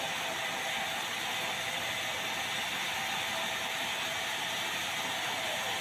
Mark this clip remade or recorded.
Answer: recorded